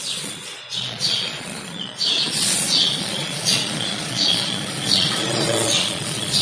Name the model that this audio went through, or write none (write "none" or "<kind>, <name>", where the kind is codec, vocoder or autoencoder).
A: vocoder, Vocos